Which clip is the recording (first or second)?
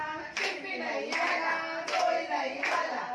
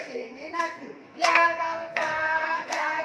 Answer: first